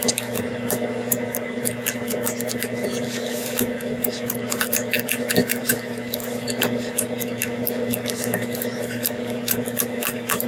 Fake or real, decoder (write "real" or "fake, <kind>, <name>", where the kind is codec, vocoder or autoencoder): fake, codec, DAC